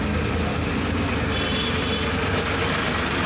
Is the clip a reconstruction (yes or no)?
no